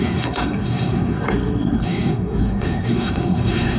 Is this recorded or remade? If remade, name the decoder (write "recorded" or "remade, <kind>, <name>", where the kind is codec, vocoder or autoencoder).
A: remade, codec, SNAC